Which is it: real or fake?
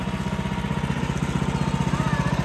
real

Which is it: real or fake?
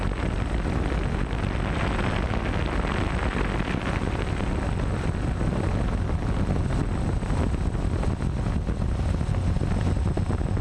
real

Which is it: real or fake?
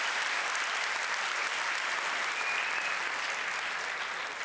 fake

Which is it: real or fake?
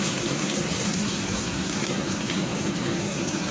fake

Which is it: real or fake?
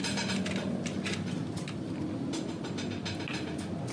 real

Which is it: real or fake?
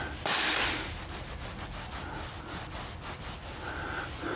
real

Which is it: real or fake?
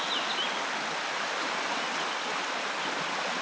real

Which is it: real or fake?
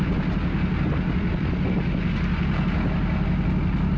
real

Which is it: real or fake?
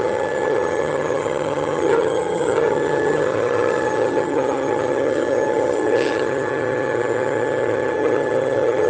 fake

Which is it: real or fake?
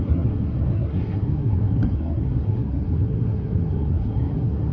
fake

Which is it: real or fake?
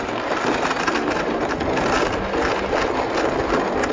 real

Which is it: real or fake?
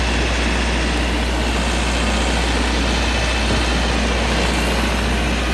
real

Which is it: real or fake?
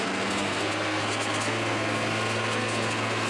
fake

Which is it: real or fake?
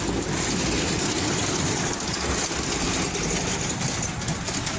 real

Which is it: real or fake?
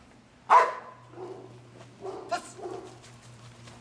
real